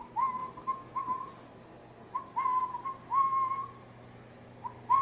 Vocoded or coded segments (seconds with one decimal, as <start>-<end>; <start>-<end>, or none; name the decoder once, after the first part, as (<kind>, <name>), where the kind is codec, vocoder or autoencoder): none